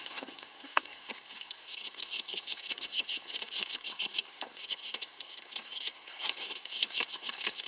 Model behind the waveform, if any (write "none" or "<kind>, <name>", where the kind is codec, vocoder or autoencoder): codec, SNAC